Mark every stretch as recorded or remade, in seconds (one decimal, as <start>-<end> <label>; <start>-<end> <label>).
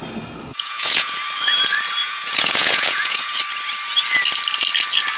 0.0-0.5 recorded; 0.5-1.1 remade; 1.1-2.0 recorded; 2.0-3.4 remade; 3.4-5.2 recorded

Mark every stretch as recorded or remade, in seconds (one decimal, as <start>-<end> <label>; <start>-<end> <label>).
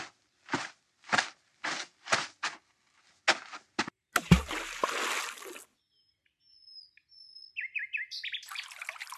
0.0-9.2 recorded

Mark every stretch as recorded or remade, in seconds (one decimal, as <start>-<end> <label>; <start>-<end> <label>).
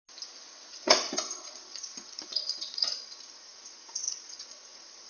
0.0-0.7 recorded; 0.7-5.1 remade